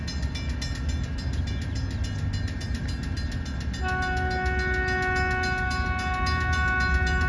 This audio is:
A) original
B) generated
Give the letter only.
A